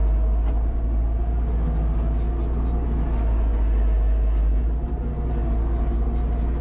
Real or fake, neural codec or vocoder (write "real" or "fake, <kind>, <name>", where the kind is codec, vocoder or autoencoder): real